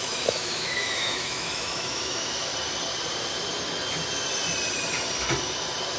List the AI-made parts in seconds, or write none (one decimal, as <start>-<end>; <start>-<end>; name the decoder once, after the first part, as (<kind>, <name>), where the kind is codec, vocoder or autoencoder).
0.0-2.5 (autoencoder, DAC-VAE)